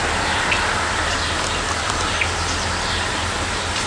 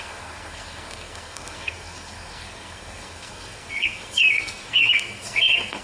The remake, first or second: second